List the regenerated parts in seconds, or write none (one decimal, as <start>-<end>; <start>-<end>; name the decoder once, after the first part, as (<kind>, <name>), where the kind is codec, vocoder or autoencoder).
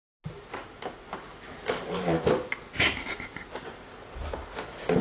none